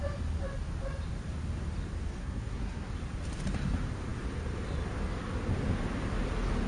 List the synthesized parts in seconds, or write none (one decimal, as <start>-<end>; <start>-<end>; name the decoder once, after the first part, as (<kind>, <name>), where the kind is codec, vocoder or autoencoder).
2.2-2.9 (codec, SNAC)